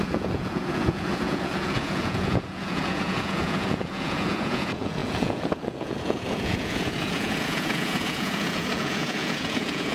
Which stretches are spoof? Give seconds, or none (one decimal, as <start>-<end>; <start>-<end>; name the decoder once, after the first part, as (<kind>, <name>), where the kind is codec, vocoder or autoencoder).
0.0-9.9 (vocoder, Vocos)